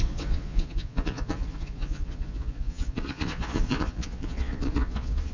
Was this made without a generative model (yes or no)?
no